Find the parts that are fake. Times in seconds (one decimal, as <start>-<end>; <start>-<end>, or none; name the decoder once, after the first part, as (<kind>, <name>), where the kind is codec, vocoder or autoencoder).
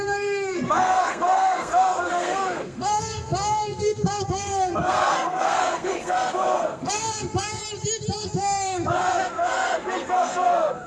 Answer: 0.0-7.6 (codec, SNAC); 8.2-10.9